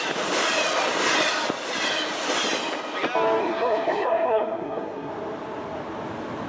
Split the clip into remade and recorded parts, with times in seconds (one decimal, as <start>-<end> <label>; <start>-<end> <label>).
0.0-3.4 recorded; 3.4-5.1 remade; 5.1-6.5 recorded